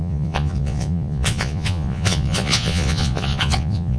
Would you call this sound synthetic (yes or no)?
yes